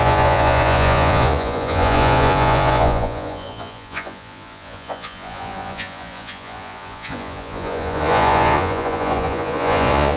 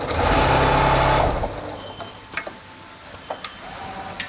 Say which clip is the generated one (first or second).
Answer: first